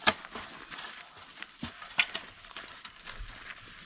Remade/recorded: recorded